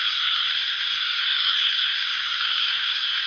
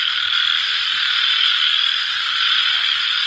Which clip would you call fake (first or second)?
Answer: first